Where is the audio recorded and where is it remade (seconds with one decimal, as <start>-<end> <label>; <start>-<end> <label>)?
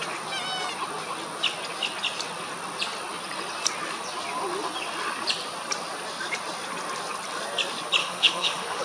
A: 0.0-8.0 recorded; 8.0-8.8 remade